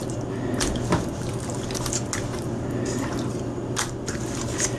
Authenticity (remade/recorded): recorded